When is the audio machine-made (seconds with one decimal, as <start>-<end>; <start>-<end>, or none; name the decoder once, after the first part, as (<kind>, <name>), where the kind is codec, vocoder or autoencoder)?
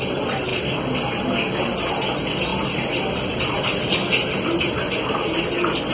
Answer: none